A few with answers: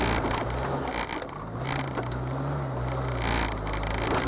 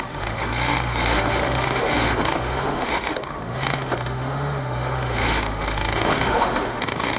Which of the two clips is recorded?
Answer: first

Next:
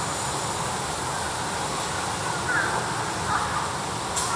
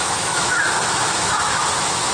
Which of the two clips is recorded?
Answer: first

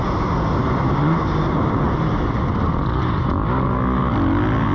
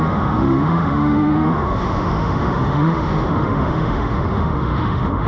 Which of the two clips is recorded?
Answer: first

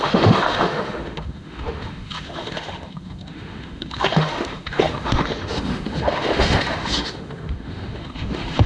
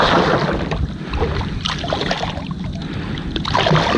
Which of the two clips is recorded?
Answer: second